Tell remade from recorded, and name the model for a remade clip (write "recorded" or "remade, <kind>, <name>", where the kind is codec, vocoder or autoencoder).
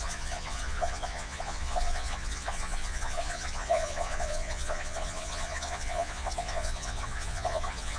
remade, vocoder, Vocos